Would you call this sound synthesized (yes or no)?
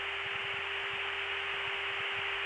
no